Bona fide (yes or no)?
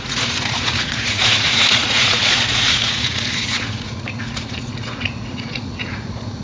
no